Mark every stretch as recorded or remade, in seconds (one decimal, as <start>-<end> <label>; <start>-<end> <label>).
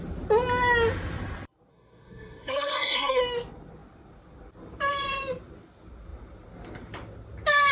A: 0.0-1.7 recorded; 1.7-3.2 remade; 3.2-7.7 recorded